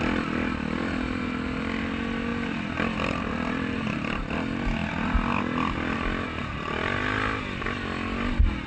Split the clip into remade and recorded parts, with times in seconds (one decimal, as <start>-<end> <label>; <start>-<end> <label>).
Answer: 0.0-2.3 recorded; 2.3-4.3 remade; 4.3-8.7 recorded